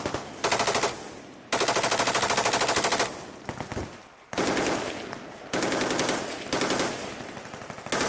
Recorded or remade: recorded